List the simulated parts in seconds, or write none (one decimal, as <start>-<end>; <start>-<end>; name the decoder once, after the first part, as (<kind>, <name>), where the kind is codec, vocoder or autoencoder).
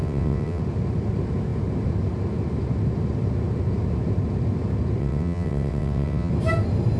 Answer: 0.0-0.6 (vocoder, WaveNeXt); 5.0-6.3